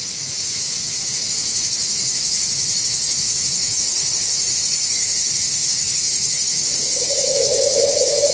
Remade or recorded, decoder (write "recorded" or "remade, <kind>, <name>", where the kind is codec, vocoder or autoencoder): remade, autoencoder, DAC-VAE